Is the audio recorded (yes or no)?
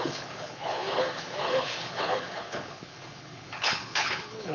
no